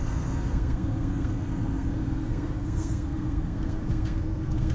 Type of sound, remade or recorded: remade